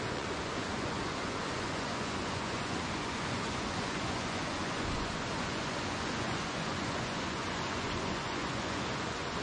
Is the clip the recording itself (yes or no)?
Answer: no